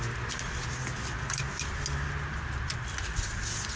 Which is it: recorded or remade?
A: recorded